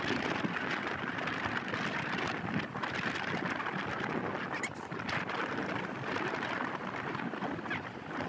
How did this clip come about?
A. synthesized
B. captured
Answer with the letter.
B